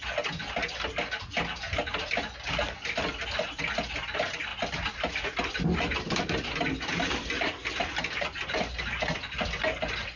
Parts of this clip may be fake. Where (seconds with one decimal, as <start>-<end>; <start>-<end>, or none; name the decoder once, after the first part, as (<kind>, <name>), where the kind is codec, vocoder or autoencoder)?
none